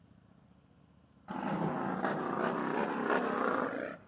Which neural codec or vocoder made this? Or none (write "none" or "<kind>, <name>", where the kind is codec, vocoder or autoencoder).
none